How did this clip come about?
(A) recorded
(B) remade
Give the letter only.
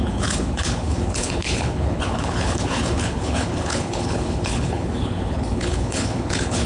B